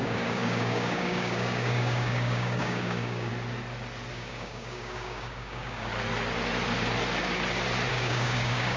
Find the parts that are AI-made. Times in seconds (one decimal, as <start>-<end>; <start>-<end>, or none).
0.0-3.3; 4.1-5.9; 7.9-8.8